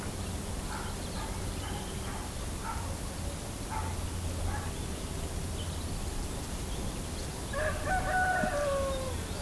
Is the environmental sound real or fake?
real